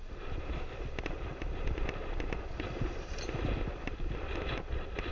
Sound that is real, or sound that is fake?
fake